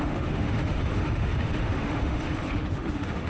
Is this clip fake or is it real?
fake